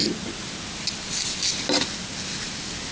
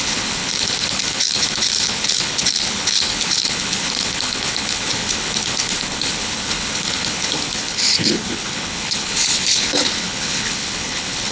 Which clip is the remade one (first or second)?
second